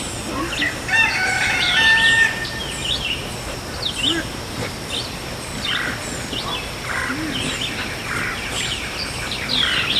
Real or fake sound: real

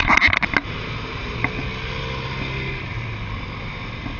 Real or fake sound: real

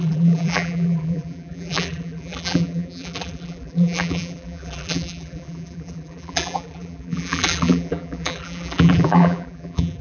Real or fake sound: fake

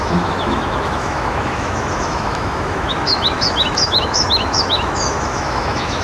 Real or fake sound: fake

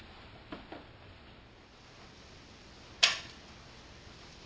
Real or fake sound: real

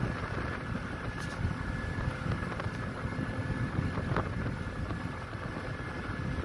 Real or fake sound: real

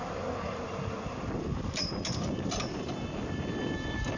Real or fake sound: real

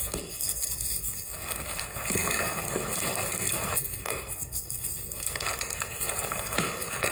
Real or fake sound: fake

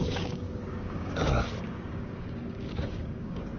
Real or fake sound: fake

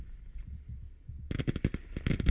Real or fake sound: real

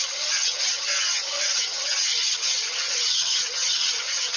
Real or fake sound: fake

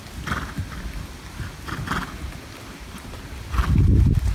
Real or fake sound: real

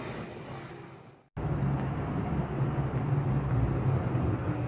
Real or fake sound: real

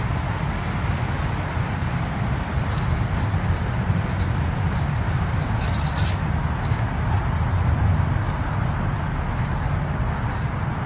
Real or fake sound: real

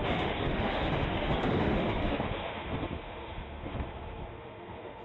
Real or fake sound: fake